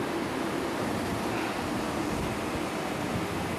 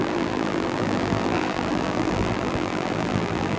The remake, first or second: second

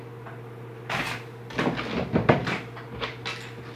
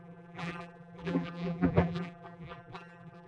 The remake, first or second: second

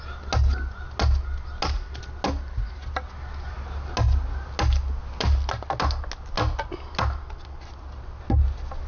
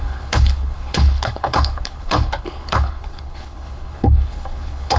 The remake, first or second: second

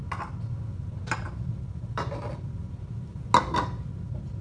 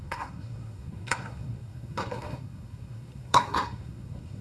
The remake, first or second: second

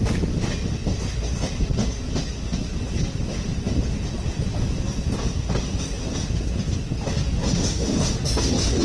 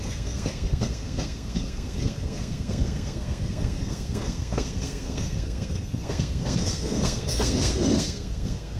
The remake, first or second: second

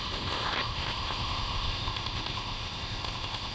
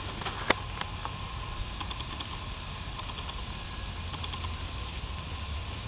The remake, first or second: first